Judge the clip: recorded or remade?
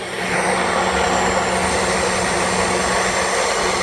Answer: recorded